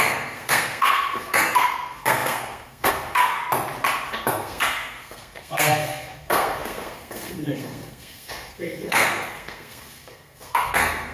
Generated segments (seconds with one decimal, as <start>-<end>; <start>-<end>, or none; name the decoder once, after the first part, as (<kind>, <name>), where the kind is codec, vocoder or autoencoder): 0.0-3.4 (codec, SNAC); 4.1-11.1